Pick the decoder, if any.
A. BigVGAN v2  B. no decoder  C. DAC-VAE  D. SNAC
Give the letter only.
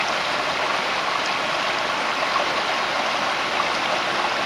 B